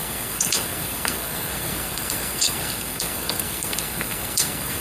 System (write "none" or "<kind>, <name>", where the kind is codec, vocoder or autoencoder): codec, SNAC